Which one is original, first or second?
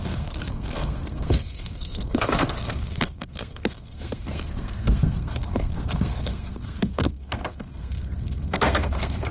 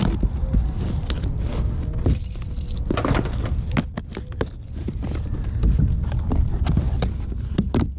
second